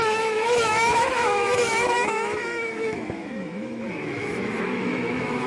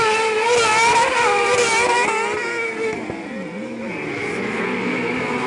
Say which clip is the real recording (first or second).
second